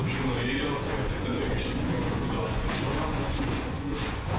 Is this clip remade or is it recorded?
remade